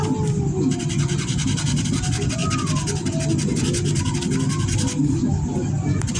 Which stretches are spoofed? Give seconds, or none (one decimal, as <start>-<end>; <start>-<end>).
none